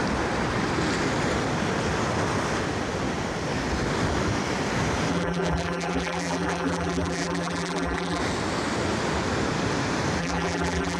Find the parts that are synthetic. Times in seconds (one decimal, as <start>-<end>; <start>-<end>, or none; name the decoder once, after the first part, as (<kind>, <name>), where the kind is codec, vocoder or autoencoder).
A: 5.1-8.2 (vocoder, BigVGAN v2); 10.2-11.0